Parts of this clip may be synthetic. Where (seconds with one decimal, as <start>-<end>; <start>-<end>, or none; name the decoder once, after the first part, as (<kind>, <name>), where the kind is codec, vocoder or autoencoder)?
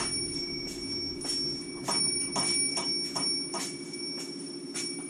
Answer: none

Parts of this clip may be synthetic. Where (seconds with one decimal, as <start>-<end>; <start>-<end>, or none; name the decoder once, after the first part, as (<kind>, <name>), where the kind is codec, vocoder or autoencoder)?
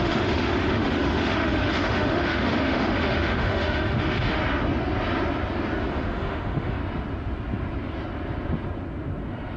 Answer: 0.0-4.4 (autoencoder, DAC-VAE); 5.9-6.8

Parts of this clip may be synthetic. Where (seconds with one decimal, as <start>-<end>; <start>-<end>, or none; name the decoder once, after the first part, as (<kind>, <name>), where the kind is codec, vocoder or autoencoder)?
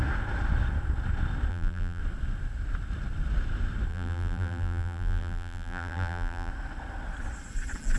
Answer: 1.5-2.0 (vocoder, BigVGAN v2); 3.9-6.5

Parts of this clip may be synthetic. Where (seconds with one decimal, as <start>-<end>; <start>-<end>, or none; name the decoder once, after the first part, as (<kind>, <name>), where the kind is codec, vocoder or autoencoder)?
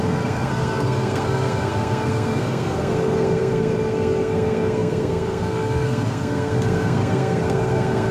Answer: 0.0-8.1 (codec, SNAC)